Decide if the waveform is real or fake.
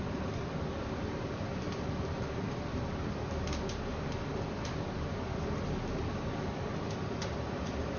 real